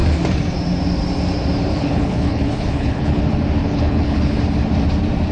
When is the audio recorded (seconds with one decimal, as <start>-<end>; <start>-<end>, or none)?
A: 0.0-1.7; 3.2-3.6; 4.4-5.3